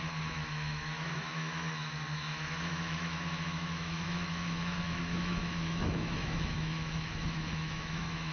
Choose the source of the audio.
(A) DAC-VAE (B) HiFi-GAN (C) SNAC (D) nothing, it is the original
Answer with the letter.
A